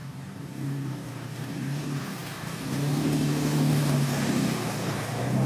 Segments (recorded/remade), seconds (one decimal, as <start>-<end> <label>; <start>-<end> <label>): 0.0-5.5 remade